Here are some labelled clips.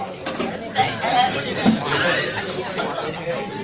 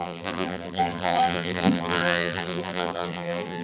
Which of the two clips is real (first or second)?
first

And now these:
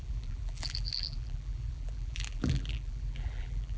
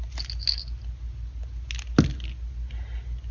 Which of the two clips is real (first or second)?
second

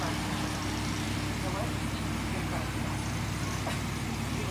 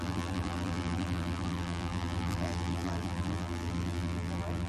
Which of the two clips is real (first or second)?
first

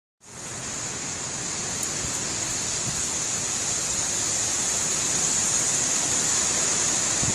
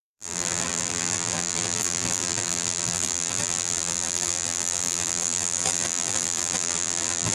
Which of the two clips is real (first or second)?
first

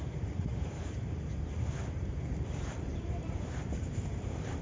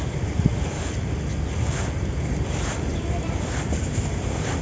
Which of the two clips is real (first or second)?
second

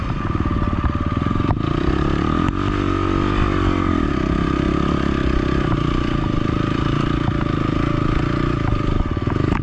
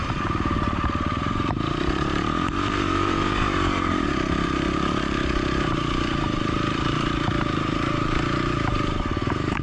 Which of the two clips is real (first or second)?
first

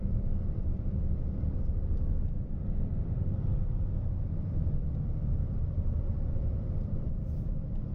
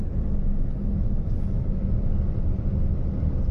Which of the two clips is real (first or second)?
second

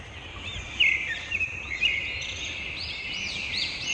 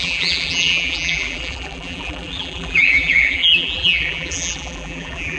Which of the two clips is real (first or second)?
first